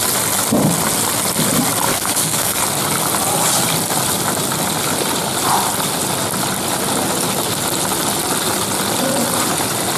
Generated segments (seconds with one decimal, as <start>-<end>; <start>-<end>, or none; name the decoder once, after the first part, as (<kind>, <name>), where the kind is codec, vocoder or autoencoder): 1.9-2.6 (codec, SNAC)